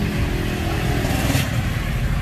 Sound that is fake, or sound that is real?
real